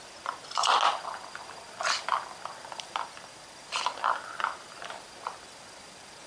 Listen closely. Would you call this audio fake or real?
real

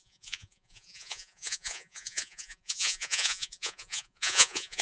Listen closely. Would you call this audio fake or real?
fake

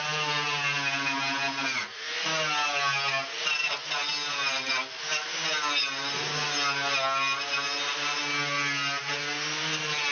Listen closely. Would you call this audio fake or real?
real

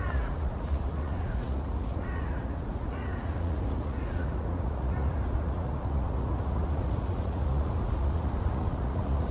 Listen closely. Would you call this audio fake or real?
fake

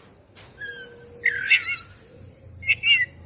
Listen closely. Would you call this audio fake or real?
real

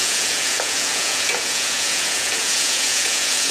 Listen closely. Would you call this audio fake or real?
fake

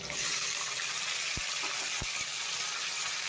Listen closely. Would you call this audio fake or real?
real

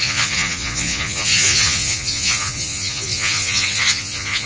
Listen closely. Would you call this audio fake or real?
fake